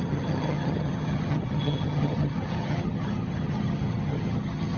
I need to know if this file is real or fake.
fake